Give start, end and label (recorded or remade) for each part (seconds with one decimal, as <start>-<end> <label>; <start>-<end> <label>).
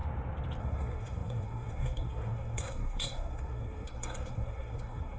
0.0-0.6 recorded; 0.6-5.2 remade